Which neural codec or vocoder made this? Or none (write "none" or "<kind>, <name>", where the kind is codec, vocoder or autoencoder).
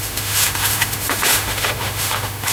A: autoencoder, DAC-VAE